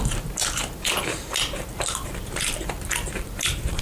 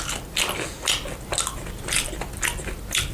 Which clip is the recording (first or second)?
second